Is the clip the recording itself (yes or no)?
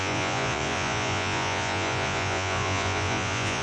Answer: no